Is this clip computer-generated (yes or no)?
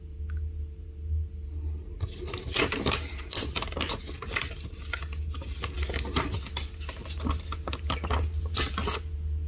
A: no